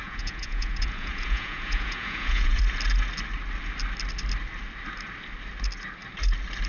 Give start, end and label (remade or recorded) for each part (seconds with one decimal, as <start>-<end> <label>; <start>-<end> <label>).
0.0-2.6 remade; 2.6-6.7 recorded